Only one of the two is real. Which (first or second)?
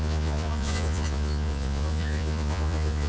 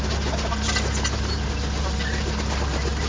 second